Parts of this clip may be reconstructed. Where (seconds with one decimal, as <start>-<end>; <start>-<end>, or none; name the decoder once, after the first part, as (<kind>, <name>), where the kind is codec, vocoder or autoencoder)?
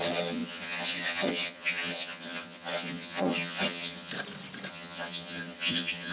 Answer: 0.0-4.1 (vocoder, HiFi-GAN); 4.7-6.1